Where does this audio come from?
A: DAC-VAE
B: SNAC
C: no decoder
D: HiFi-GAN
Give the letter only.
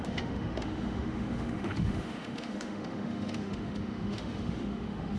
A